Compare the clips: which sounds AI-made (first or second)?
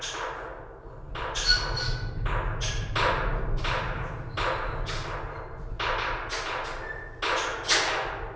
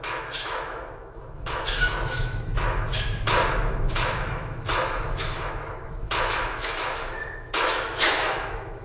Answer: second